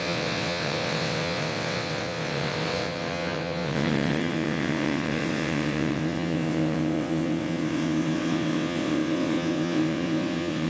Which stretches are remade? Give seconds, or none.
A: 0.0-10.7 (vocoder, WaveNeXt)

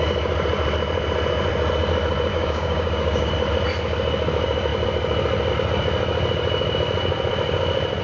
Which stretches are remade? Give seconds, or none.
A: 2.3-3.3 (codec, DAC)